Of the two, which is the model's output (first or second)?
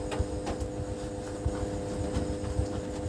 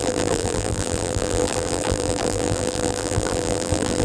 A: second